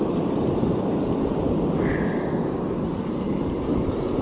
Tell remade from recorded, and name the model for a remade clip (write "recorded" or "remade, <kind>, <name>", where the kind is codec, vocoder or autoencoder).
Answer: recorded